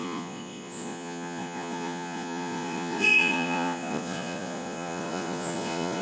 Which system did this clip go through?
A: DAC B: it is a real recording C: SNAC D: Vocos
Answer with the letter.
D